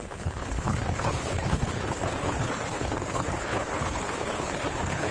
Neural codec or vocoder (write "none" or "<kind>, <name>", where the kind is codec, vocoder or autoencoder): codec, HILCodec